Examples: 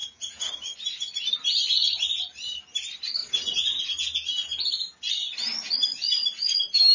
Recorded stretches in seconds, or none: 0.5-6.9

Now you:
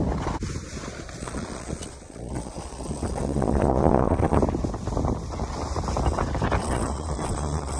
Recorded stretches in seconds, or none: 0.0-1.2; 4.4-6.6

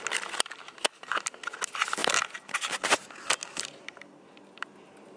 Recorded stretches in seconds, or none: 0.0-5.2

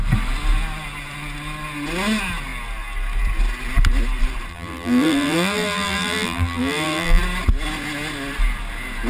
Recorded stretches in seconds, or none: 0.0-4.5; 7.2-9.1

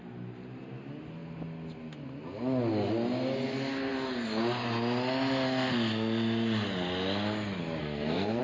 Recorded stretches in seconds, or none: 0.0-7.8

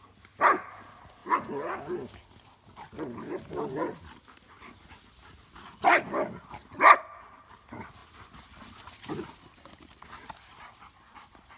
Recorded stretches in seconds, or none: 0.0-8.0; 10.8-11.6